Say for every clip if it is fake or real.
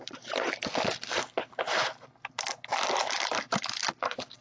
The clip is real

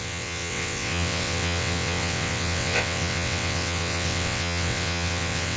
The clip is fake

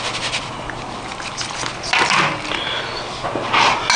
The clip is real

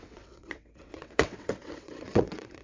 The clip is fake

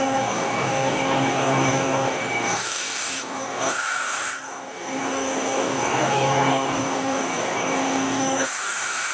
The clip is fake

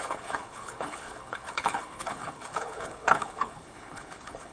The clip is fake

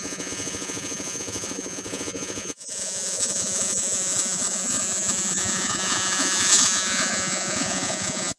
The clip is fake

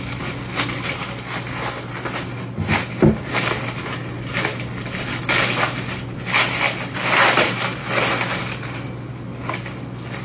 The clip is real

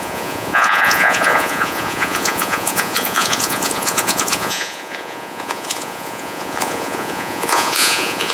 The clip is fake